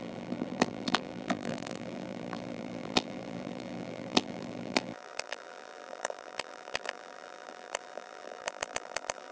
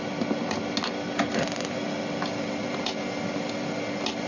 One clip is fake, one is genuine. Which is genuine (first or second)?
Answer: second